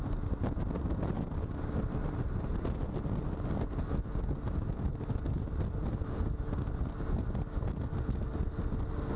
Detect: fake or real real